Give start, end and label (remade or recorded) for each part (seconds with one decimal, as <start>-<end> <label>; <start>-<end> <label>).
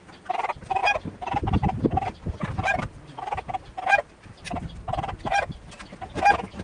0.0-6.6 recorded